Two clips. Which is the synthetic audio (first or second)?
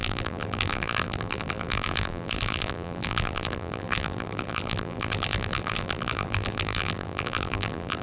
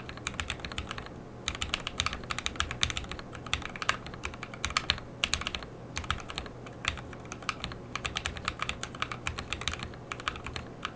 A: first